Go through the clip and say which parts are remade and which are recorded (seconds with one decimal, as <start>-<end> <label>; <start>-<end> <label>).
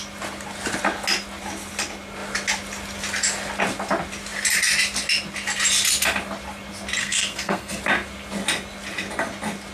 0.0-7.0 recorded; 7.0-7.8 remade; 7.8-9.7 recorded